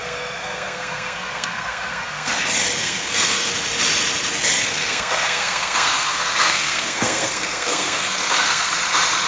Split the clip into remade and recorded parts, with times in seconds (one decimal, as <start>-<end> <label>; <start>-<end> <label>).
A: 0.0-2.3 remade; 2.3-2.8 recorded; 2.8-3.5 remade; 3.5-4.6 recorded; 4.6-8.7 remade; 8.7-9.3 recorded